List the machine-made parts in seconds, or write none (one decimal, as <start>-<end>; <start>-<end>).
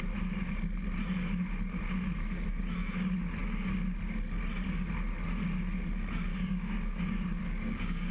6.3-7.0; 7.4-8.1